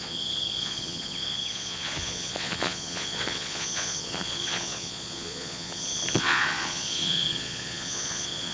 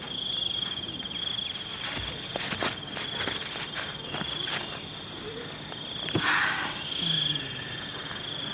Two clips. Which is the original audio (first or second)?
second